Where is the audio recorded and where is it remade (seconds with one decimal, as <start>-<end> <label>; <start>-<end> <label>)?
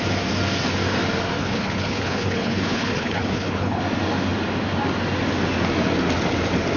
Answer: 0.0-1.4 recorded; 1.4-3.8 remade; 3.8-6.8 recorded